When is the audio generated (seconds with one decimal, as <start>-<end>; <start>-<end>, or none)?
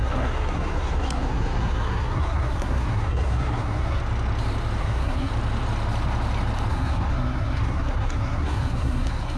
0.0-4.0; 4.8-5.3; 6.7-9.4